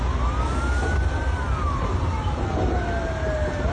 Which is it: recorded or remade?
recorded